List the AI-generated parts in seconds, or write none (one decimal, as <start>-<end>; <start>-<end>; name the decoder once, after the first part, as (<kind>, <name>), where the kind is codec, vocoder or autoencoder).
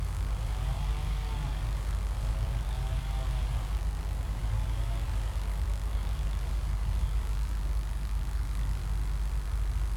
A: 0.0-8.8 (codec, DAC)